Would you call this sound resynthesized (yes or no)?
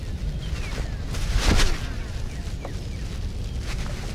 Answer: no